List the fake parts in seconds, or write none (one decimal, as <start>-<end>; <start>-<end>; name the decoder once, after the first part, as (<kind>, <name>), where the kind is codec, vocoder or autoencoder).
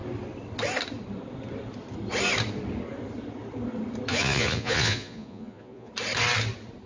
4.1-5.9 (vocoder, Vocos)